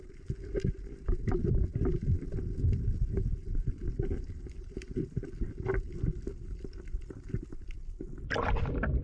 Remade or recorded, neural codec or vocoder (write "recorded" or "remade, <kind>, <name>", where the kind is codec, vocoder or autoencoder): recorded